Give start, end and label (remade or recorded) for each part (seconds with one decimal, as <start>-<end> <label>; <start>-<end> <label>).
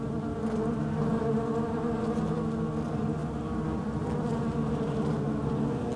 0.0-6.0 recorded